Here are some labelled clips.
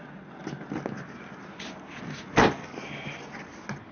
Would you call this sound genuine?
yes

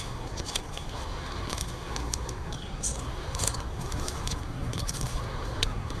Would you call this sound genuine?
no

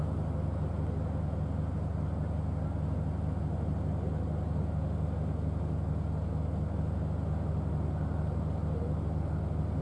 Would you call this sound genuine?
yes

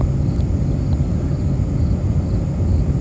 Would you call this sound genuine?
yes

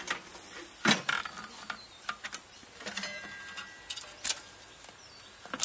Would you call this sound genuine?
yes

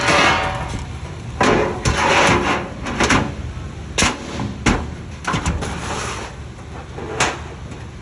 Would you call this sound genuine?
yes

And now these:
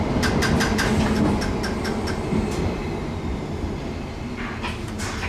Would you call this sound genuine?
yes